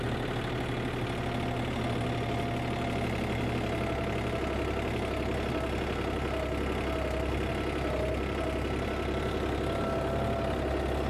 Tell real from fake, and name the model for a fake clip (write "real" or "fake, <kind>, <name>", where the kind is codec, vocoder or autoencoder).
real